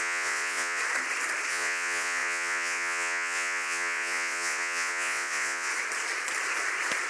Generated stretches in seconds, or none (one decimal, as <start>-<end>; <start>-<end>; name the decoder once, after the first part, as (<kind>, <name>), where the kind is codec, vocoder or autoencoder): 0.0-0.8 (vocoder, Vocos); 1.5-5.7